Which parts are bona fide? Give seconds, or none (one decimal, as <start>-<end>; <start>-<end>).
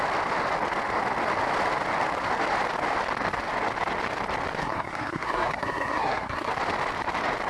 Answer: 0.0-4.6; 6.5-7.5